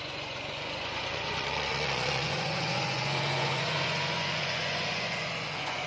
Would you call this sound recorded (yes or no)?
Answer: no